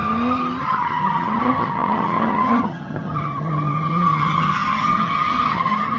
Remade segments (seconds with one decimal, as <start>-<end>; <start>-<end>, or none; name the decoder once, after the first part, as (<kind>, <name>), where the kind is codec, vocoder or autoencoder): 0.6-6.0 (vocoder, HiFi-GAN)